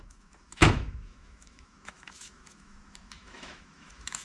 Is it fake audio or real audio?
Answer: fake